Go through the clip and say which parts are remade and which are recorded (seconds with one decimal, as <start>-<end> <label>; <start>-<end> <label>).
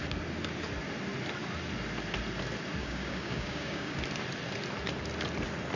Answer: 0.0-2.8 recorded; 2.8-4.0 remade; 4.0-5.8 recorded